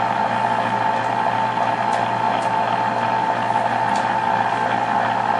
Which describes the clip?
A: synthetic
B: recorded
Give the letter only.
B